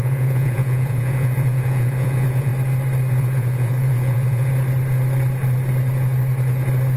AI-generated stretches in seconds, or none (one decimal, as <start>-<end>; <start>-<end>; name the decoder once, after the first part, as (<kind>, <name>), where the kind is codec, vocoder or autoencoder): 0.0-2.5 (vocoder, Vocos); 3.1-4.5

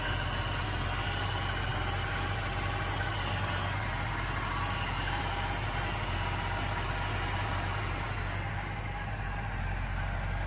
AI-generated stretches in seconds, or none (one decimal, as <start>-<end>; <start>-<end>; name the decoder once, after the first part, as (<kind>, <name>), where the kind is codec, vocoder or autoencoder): none

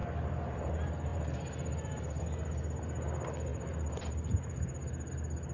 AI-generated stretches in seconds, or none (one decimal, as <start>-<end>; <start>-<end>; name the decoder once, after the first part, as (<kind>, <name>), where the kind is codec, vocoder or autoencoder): 0.0-0.7 (vocoder, BigVGAN v2); 1.1-2.2; 3.5-5.1